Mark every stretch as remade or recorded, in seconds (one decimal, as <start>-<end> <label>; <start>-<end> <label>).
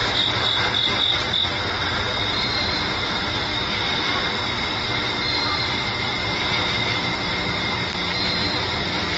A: 0.0-3.5 recorded; 3.5-4.3 remade; 4.3-9.2 recorded